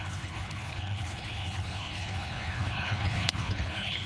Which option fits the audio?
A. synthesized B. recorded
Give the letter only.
A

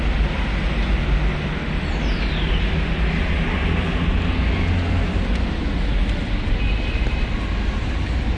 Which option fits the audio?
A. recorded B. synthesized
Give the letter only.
A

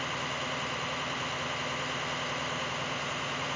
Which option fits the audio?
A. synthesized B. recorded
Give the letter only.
B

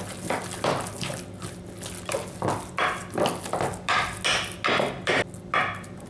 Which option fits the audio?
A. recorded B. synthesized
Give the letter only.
A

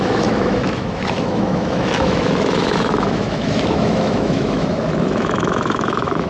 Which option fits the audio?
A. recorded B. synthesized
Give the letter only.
B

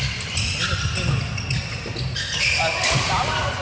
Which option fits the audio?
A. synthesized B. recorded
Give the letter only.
B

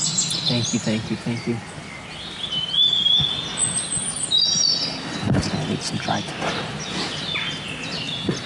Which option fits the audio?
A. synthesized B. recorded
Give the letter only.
B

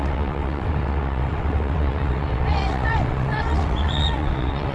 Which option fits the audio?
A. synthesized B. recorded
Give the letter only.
A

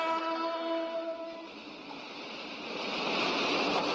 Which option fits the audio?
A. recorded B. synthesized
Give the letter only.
A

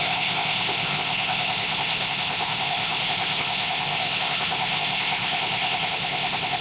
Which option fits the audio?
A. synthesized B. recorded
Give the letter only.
A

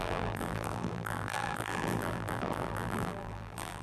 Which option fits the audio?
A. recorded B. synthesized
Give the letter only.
B